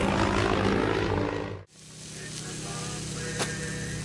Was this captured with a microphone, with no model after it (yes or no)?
yes